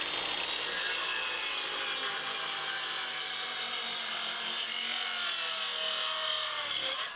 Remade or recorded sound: recorded